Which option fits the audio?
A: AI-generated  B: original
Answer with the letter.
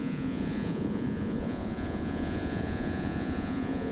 A